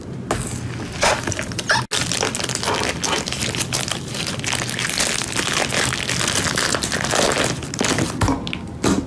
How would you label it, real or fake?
real